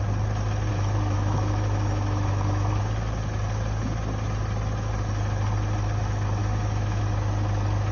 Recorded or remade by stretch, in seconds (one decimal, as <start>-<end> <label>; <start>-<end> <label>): 0.0-0.7 recorded; 0.7-2.8 remade; 2.8-6.4 recorded; 6.4-7.0 remade; 7.0-7.9 recorded

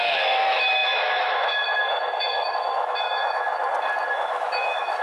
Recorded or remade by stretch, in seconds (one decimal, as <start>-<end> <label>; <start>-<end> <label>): 0.0-3.5 remade; 3.5-4.1 recorded; 4.1-5.0 remade

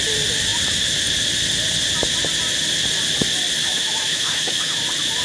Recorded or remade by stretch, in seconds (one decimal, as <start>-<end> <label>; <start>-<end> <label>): 0.0-3.6 recorded; 3.6-4.8 remade; 4.8-5.2 recorded

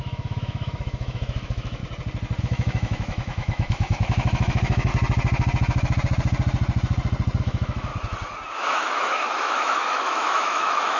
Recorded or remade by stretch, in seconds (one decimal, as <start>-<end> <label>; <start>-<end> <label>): 0.0-1.8 remade; 1.8-2.4 recorded; 2.4-4.9 remade; 4.9-7.4 recorded; 7.4-7.9 remade; 7.9-8.5 recorded; 8.5-11.0 remade

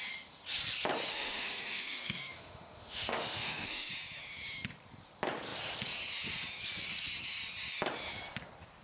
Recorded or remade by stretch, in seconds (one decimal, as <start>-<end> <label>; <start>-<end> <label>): 0.0-1.1 recorded; 1.1-3.9 remade; 3.9-8.8 recorded

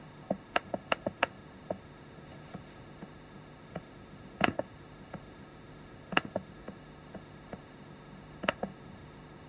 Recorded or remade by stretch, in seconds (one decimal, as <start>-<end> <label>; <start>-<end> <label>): 0.0-9.5 remade